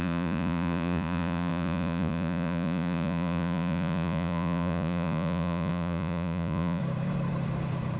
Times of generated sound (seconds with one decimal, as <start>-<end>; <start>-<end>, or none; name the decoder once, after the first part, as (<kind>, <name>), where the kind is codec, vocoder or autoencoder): 0.0-6.8 (vocoder, Vocos)